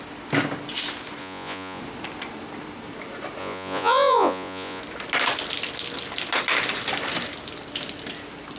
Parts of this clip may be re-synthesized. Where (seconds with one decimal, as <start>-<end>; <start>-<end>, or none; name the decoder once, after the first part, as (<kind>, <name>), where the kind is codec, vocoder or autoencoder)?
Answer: 1.2-1.8 (vocoder, Vocos); 3.4-4.8